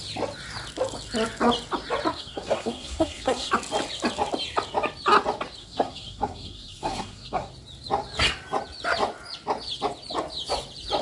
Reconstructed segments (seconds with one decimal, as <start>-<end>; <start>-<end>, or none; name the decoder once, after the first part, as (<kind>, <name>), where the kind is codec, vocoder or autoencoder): 2.1-3.5 (codec, SNAC); 5.6-7.5